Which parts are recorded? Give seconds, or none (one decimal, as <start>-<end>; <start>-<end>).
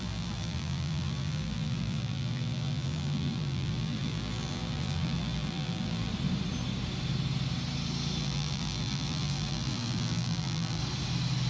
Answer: 6.1-8.2; 10.8-11.5